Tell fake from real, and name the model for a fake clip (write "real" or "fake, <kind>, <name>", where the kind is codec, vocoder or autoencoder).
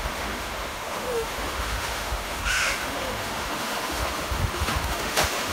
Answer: fake, autoencoder, DAC-VAE